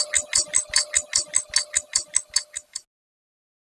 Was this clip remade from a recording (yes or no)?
no